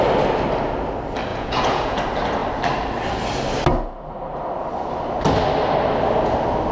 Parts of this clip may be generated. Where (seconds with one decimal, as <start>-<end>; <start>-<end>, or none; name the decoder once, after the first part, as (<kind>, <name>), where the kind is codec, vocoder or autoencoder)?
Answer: 1.3-2.0 (vocoder, Vocos)